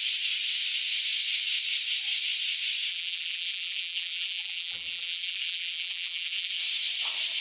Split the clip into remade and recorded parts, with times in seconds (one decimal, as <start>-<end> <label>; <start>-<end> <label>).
0.0-2.9 recorded; 2.9-6.6 remade; 6.6-7.4 recorded